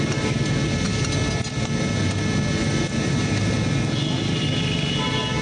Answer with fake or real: real